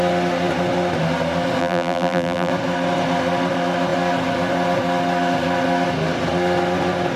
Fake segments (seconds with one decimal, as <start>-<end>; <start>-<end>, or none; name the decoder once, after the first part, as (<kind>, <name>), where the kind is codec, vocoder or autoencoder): 1.6-2.5 (vocoder, BigVGAN v2)